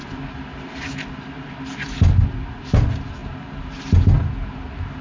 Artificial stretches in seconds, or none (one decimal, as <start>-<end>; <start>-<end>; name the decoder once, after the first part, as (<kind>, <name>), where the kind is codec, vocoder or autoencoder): none

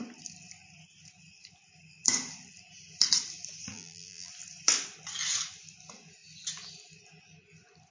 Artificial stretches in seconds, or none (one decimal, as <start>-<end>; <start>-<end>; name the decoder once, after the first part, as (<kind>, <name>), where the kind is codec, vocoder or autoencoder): 3.7-4.3 (vocoder, BigVGAN v2)